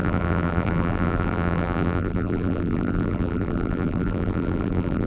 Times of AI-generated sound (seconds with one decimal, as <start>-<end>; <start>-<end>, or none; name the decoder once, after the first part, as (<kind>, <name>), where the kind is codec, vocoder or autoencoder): 0.0-5.1 (vocoder, BigVGAN v2)